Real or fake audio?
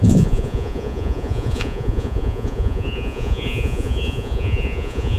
fake